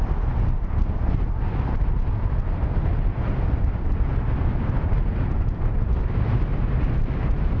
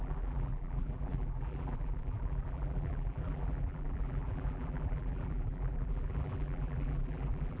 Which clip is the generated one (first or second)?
second